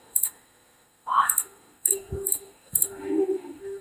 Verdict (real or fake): fake